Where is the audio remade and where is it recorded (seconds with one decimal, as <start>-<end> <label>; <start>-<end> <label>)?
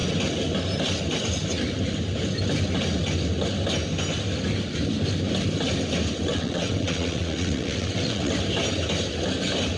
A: 0.0-6.3 recorded; 6.3-8.3 remade; 8.3-9.8 recorded